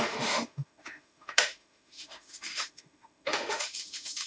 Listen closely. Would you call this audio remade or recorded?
remade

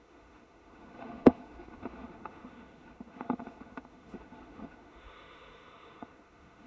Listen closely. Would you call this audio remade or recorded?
remade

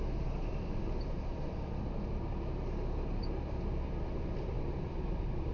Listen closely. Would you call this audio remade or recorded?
recorded